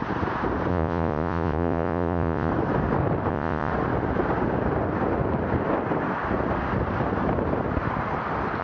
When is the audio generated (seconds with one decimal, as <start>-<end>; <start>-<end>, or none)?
0.7-2.5; 3.3-3.7